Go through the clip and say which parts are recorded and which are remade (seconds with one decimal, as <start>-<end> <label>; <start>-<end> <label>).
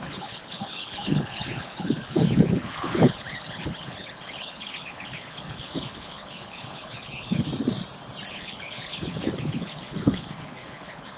0.0-7.5 remade; 7.5-8.3 recorded; 8.3-11.2 remade